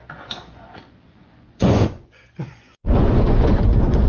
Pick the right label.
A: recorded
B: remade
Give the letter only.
B